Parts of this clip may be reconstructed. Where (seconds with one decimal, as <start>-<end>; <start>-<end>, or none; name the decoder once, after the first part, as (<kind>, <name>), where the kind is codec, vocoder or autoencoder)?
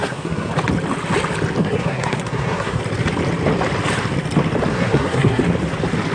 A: 0.0-0.5 (codec, SNAC); 1.6-2.8; 4.7-5.4